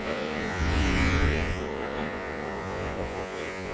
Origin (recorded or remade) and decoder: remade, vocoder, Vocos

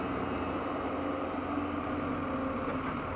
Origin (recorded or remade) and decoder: recorded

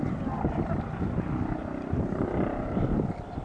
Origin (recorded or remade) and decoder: recorded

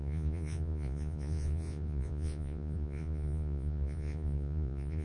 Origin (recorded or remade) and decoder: remade, vocoder, Vocos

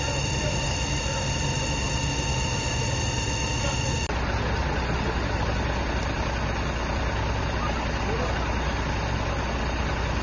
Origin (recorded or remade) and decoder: recorded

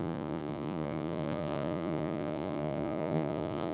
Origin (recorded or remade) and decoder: remade, vocoder, Vocos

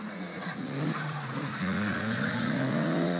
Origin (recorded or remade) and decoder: remade, vocoder, Vocos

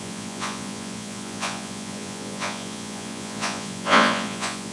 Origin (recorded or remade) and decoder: remade, vocoder, Vocos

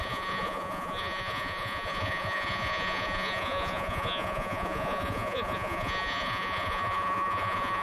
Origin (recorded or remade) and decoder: remade, vocoder, Vocos